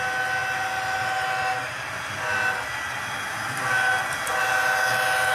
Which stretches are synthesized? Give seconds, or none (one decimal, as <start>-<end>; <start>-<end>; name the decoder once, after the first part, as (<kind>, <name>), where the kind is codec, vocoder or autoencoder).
none